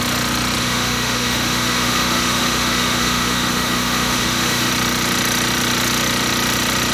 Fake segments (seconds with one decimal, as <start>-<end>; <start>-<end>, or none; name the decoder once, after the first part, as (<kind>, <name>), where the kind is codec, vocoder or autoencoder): 0.6-4.7 (autoencoder, DAC-VAE)